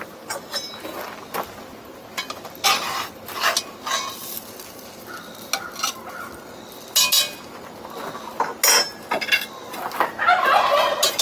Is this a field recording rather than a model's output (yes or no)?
yes